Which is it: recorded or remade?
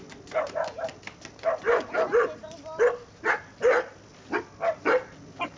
recorded